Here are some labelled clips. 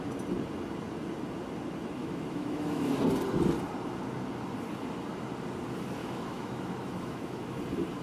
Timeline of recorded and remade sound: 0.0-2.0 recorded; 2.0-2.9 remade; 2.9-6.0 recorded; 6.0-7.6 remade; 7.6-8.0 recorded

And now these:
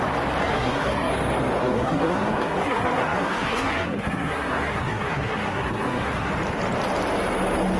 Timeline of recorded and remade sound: 0.0-0.4 recorded; 0.4-1.1 remade; 1.1-1.6 recorded; 1.6-6.3 remade; 6.3-7.8 recorded